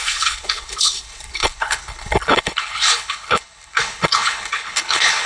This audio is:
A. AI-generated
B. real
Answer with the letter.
A